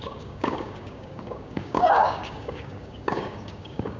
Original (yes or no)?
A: no